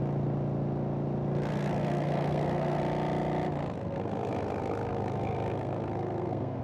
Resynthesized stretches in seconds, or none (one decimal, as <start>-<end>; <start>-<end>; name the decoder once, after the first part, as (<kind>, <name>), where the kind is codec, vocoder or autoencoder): 1.5-2.8 (codec, SNAC); 3.8-6.6